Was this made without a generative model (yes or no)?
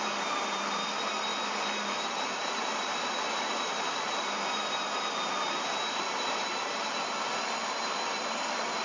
no